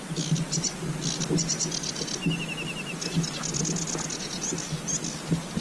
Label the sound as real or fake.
real